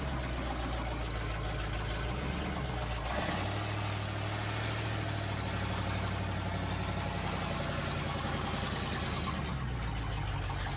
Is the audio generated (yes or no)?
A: no